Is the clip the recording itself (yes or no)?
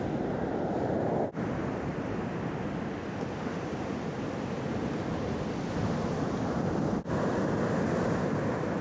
yes